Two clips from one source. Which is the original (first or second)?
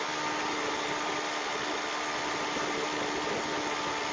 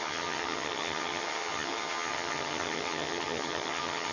first